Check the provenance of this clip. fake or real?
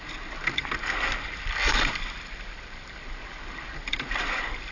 fake